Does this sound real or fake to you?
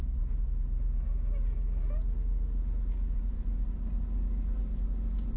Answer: real